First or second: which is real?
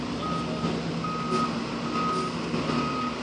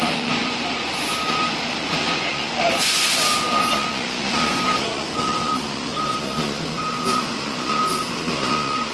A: first